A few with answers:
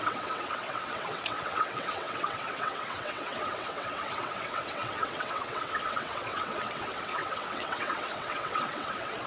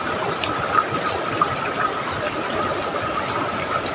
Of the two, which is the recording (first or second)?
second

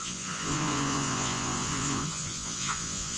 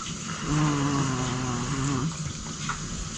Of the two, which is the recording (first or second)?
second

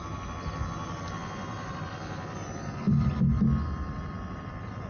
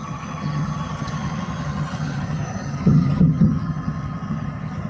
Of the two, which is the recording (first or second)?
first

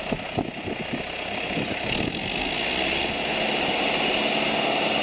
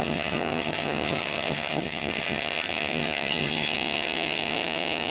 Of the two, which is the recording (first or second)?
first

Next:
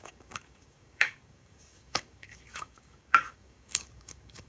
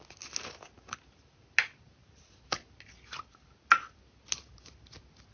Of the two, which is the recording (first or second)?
second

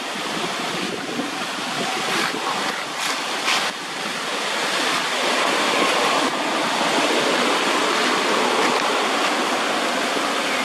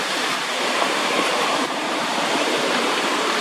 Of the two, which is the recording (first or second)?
first